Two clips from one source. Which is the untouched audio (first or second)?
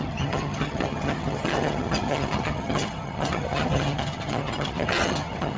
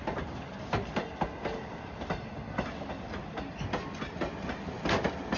second